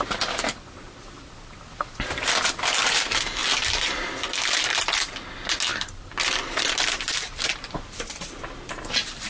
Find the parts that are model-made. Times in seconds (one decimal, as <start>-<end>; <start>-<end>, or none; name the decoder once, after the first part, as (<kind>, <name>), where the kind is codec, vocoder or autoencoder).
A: 3.4-4.1 (vocoder, BigVGAN v2); 5.7-8.9